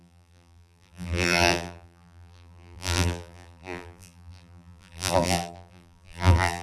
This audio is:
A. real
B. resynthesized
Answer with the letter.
B